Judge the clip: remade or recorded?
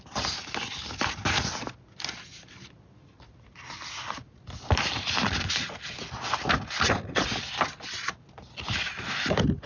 recorded